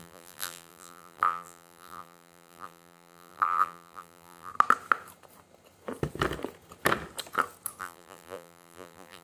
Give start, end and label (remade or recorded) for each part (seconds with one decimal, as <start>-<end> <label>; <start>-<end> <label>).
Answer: 0.0-4.5 remade; 4.5-7.8 recorded; 7.8-9.2 remade